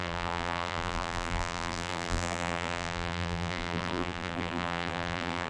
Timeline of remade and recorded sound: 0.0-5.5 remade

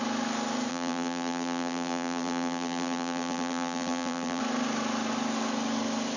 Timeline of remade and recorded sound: 0.0-0.7 recorded; 0.7-4.4 remade; 4.4-6.2 recorded